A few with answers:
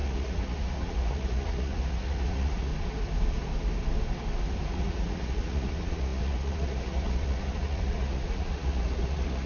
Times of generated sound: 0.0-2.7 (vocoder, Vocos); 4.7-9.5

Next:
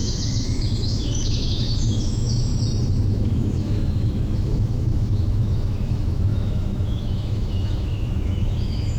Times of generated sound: 0.0-2.5 (autoencoder, DAC-VAE); 3.1-9.0

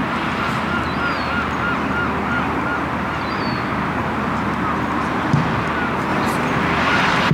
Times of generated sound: 6.1-7.3 (vocoder, BigVGAN v2)

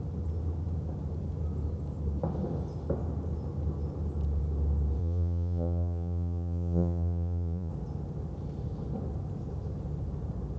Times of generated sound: 5.0-7.7 (vocoder, Vocos)

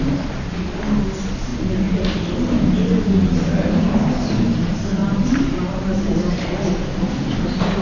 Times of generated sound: 5.0-6.7 (vocoder, BigVGAN v2)

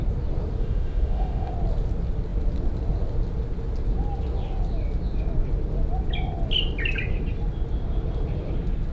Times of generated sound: 0.6-1.5 (autoencoder, DAC-VAE)

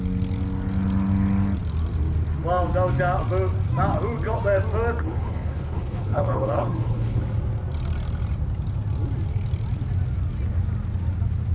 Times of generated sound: 5.0-7.2 (codec, HILCodec)